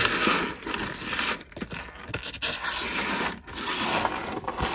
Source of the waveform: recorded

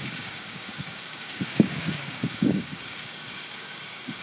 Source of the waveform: remade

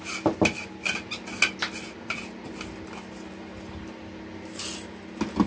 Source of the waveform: recorded